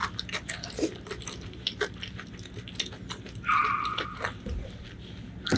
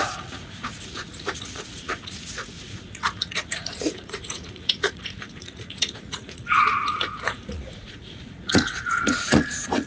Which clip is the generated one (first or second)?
second